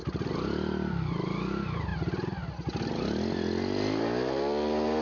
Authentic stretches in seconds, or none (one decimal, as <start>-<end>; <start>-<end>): 0.0-5.0